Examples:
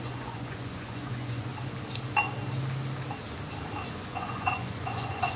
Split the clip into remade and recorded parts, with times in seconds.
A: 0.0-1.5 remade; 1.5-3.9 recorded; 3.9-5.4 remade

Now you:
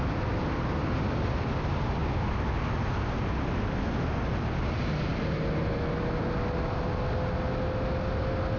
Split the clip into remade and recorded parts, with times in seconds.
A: 0.0-8.6 recorded

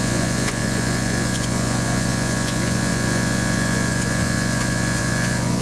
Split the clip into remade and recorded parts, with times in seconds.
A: 0.0-5.6 remade

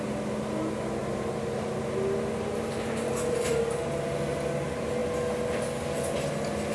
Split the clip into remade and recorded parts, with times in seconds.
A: 0.0-6.7 recorded

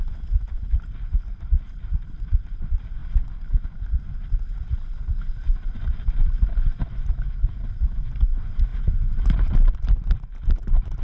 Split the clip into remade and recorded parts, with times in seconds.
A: 0.0-11.0 recorded

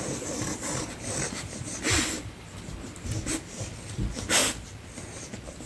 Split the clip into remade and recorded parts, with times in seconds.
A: 0.0-5.7 recorded